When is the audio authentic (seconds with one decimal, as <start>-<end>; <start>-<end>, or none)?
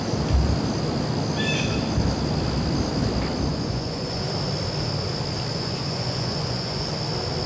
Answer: 0.0-3.5; 4.3-5.5; 6.9-7.5